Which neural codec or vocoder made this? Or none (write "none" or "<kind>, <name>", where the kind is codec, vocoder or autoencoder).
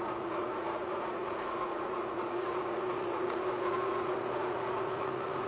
vocoder, Vocos